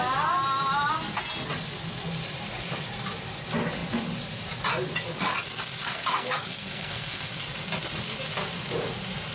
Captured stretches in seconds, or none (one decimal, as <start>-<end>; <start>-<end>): 0.0-5.8; 7.3-9.3